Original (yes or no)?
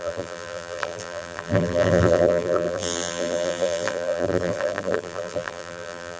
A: no